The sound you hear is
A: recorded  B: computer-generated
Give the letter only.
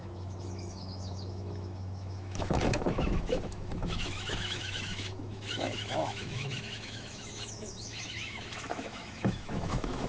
B